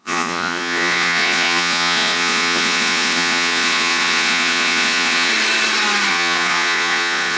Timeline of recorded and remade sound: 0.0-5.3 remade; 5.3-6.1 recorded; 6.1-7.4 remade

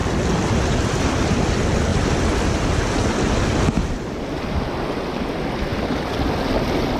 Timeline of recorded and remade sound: 0.0-7.0 recorded